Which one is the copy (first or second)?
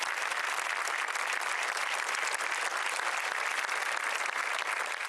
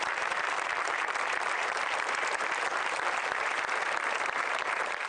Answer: second